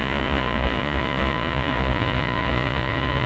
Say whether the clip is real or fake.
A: fake